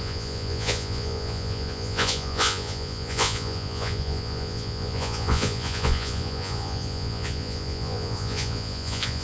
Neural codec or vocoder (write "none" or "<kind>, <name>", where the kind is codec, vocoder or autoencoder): vocoder, Vocos